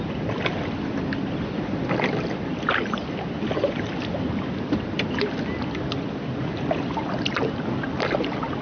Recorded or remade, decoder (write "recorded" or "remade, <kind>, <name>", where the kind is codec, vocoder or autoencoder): recorded